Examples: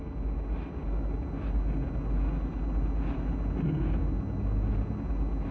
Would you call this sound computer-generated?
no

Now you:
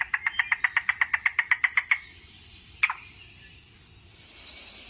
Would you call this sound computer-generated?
no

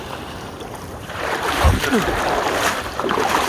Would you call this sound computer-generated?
yes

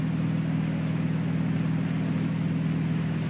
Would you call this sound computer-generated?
no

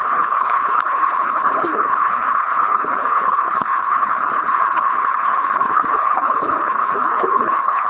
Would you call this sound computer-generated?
yes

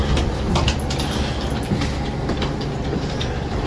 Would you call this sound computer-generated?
no